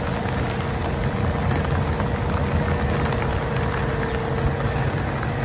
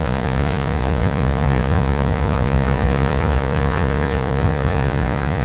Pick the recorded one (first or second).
first